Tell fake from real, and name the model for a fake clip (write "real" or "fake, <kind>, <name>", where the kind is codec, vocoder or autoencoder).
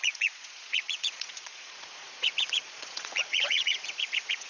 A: fake, vocoder, Vocos